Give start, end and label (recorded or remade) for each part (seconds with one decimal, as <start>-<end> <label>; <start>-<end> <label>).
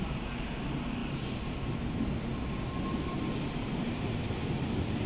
0.0-5.1 recorded